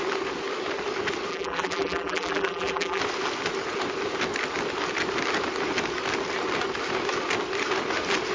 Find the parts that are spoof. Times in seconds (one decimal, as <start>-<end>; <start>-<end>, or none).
1.3-3.0